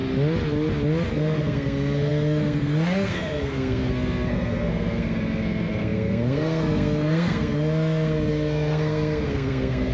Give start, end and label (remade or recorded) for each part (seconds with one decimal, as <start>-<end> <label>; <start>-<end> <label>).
0.0-1.1 recorded; 1.1-9.9 remade